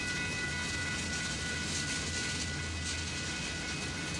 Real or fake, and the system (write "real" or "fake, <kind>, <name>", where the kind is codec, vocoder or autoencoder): real